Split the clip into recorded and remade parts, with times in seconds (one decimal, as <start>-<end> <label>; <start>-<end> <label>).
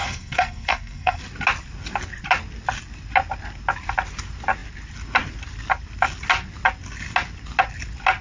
0.0-1.2 remade; 1.2-8.2 recorded